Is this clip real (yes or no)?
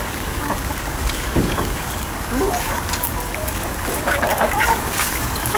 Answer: no